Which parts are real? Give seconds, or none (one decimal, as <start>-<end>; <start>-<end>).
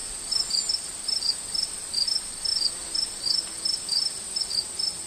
0.0-5.1